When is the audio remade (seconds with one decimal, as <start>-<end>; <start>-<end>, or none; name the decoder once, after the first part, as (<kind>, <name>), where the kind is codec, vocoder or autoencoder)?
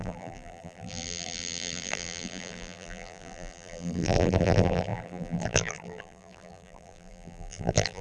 0.0-8.0 (vocoder, BigVGAN v2)